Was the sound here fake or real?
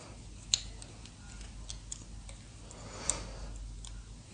real